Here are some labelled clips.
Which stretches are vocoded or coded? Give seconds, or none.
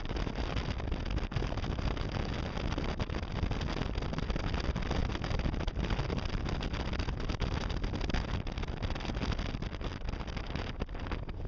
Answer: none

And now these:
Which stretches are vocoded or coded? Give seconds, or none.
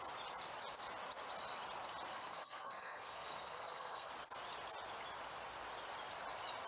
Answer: 2.1-4.1 (codec, SNAC)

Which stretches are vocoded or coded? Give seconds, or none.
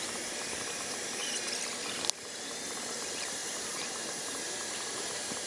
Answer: 0.0-1.2 (vocoder, BigVGAN v2); 2.8-5.5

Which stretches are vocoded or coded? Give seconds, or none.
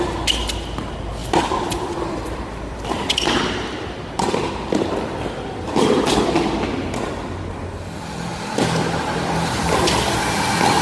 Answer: 1.2-3.4 (vocoder, BigVGAN v2); 8.3-10.8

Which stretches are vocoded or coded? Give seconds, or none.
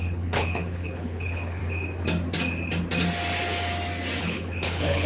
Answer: 0.0-1.6 (codec, HILCodec); 4.2-5.1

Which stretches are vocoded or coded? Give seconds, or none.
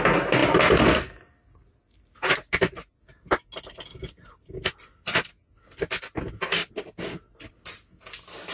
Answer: none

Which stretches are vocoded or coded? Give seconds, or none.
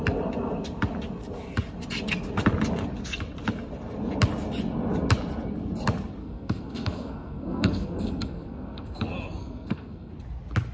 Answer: 6.2-9.0 (codec, SNAC); 9.4-10.1